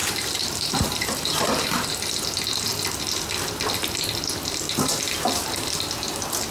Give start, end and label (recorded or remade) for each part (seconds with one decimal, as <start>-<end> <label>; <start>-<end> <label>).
0.0-2.1 remade; 2.1-6.5 recorded